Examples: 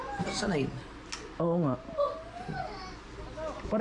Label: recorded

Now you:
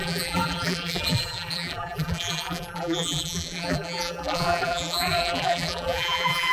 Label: remade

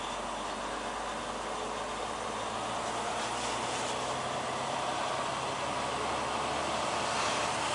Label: recorded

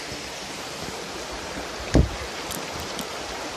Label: remade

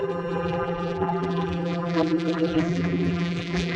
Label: remade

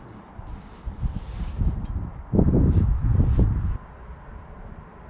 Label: recorded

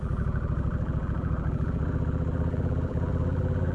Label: remade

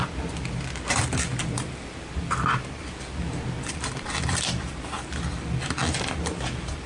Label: remade